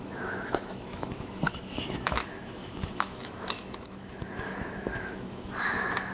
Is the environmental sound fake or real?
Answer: fake